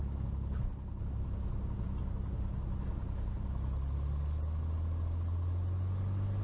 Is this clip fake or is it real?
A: real